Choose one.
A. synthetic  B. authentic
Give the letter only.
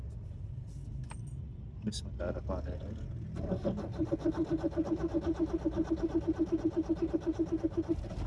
B